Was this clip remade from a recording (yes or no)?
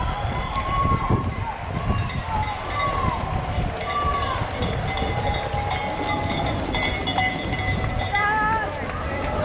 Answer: no